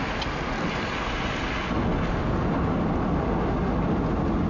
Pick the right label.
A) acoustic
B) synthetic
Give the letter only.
A